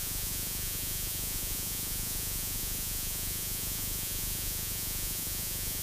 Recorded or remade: remade